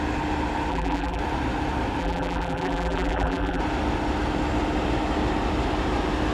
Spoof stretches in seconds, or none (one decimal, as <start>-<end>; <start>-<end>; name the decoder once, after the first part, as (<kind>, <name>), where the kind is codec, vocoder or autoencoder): 0.7-1.2 (vocoder, BigVGAN v2); 2.0-3.6